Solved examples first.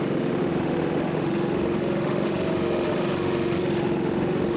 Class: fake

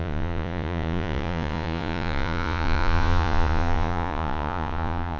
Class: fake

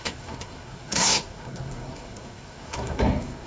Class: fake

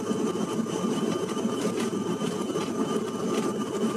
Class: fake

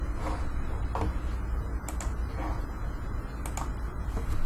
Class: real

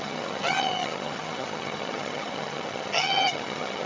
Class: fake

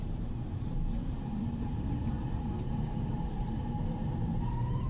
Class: fake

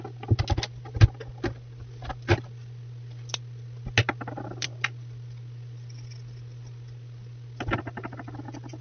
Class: real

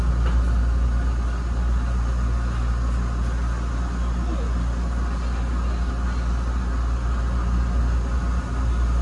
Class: real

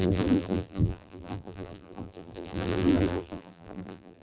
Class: fake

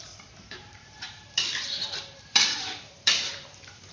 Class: fake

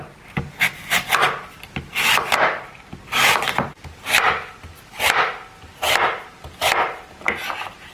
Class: real